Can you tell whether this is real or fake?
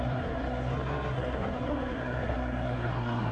fake